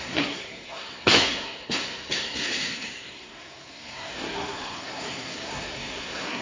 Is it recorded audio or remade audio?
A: remade